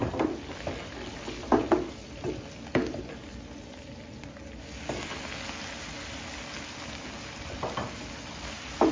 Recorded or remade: recorded